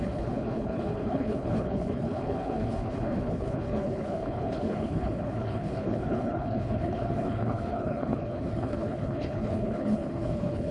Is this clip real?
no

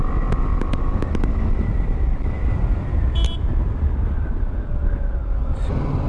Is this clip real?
yes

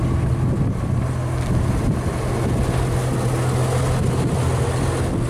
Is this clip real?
yes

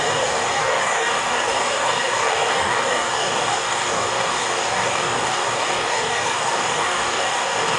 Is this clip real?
no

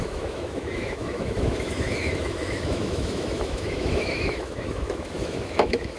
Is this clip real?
no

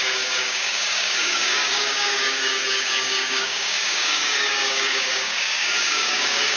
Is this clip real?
no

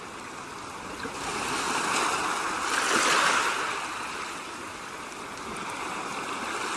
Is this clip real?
yes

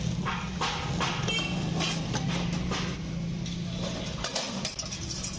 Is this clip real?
yes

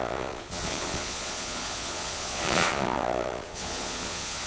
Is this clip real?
no